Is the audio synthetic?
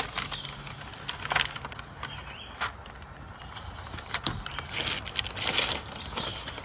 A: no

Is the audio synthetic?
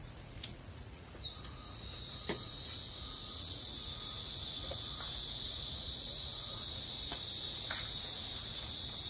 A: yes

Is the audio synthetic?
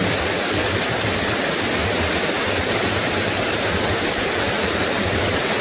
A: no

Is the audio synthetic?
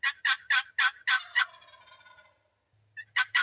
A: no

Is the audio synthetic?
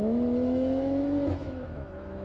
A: yes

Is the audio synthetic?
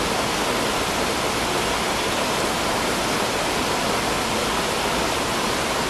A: no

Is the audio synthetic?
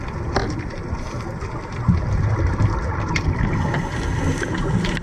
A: no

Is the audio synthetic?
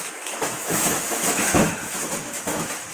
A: yes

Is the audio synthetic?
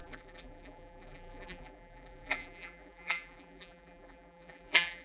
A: yes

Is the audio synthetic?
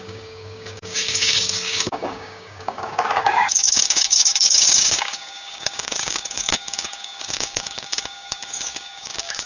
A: yes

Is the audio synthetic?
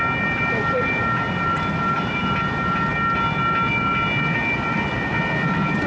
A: no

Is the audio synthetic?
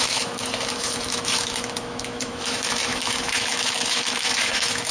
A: yes